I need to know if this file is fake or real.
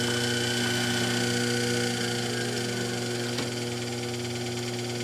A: real